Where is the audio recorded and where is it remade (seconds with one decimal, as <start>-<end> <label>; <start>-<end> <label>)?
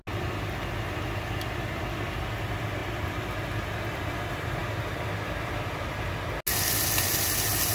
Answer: 0.0-7.7 recorded